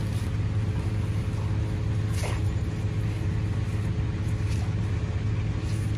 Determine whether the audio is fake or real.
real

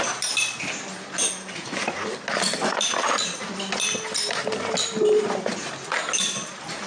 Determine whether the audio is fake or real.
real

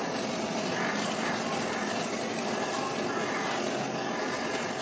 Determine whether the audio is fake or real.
real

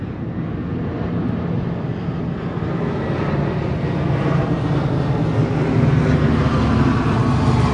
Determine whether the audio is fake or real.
real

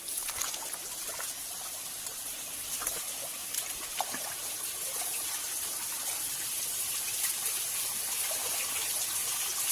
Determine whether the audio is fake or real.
real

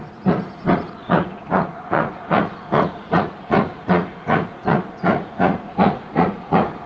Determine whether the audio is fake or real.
fake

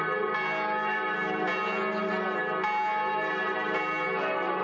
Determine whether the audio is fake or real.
real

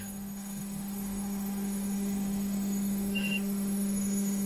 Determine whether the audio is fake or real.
fake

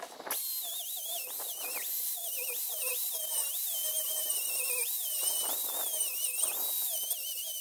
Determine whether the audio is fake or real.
real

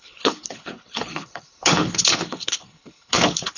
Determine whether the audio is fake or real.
fake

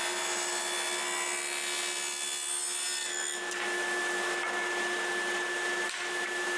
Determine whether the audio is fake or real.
real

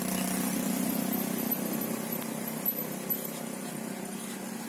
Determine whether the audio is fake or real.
real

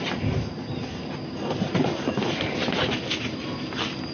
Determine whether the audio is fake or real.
real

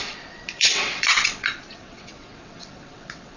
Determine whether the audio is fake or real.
fake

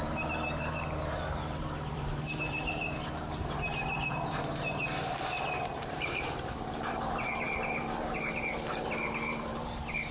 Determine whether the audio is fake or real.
fake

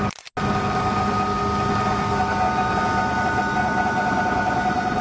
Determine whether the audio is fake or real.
real